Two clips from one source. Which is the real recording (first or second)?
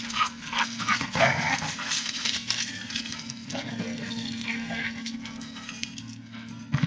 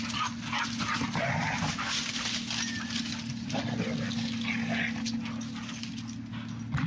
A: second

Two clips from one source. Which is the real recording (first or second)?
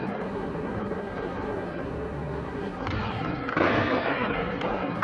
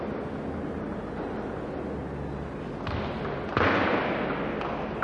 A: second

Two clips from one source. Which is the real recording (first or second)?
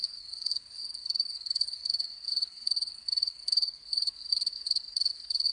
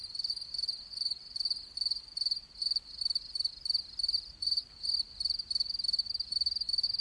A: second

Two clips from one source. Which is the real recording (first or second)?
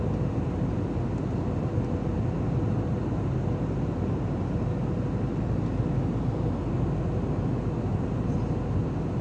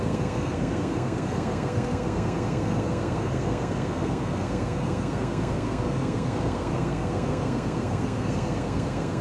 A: first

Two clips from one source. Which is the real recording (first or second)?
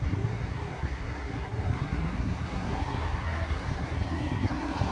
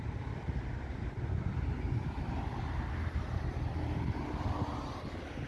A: second